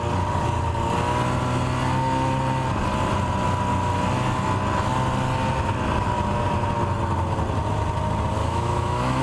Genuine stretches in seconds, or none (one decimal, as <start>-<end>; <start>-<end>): 0.0-8.4